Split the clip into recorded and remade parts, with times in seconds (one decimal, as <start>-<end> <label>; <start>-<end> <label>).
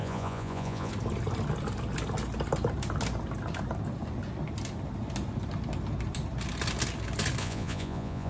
0.0-0.9 remade; 0.9-7.4 recorded; 7.4-8.3 remade